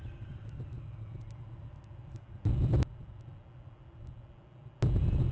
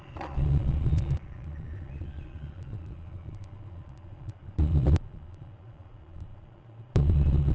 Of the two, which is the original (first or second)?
first